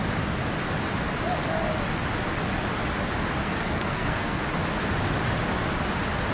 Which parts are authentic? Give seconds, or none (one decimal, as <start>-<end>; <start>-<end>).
0.0-3.4; 4.4-6.3